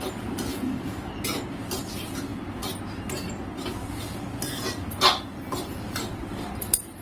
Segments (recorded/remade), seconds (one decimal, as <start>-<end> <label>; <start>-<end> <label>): 0.0-0.5 recorded; 0.5-1.1 remade; 1.1-7.0 recorded